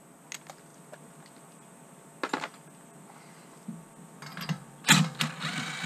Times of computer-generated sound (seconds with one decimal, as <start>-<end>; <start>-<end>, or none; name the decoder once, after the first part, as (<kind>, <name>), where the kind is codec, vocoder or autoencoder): none